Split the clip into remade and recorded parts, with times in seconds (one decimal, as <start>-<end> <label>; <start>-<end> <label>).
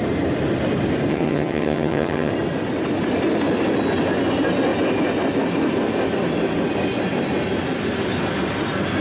0.0-1.1 recorded; 1.1-2.3 remade; 2.3-9.0 recorded